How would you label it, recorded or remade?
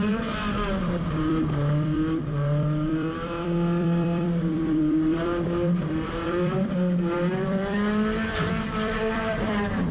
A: remade